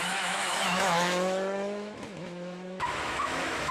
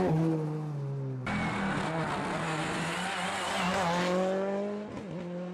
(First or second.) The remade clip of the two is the first